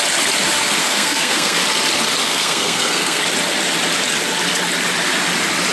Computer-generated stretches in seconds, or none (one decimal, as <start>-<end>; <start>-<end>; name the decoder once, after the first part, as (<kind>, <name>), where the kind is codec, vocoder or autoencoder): 0.8-1.6 (codec, SNAC); 2.2-3.2